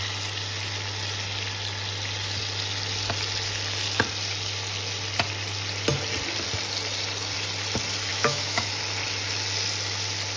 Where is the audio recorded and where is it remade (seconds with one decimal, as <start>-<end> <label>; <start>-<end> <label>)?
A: 0.0-8.1 recorded; 8.1-8.8 remade; 8.8-10.4 recorded